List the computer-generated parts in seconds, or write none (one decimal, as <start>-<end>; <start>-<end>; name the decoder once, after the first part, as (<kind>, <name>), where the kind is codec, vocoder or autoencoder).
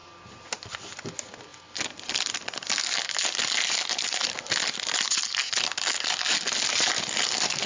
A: none